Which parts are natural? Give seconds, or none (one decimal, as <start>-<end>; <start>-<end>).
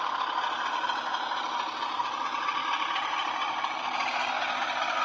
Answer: 0.0-1.1; 2.2-2.6; 3.7-5.0